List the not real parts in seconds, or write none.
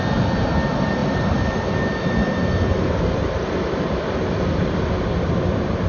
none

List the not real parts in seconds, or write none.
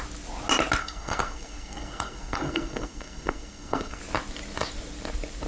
0.8-4.0 (codec, SNAC)